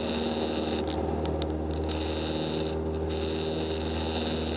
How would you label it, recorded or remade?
recorded